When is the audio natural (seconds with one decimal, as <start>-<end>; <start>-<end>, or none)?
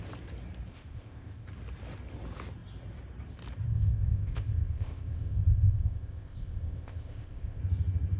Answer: 0.0-0.7; 1.5-3.7; 7.6-8.2